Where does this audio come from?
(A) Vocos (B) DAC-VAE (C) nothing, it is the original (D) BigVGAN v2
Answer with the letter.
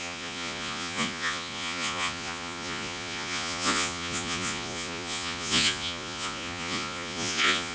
A